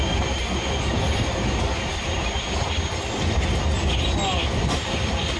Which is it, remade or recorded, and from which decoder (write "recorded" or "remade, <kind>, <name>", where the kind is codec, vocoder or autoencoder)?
recorded